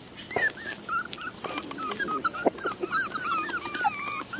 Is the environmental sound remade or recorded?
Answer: recorded